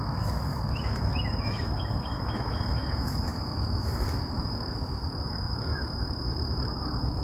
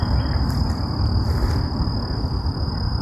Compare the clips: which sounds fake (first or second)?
first